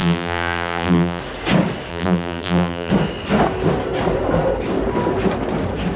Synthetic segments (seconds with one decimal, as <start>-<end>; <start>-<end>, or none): 0.0-1.2; 1.9-2.9